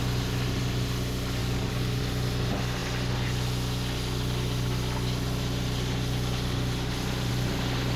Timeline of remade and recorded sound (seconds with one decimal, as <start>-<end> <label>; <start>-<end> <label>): 0.0-1.4 recorded; 1.4-2.0 remade; 2.0-8.0 recorded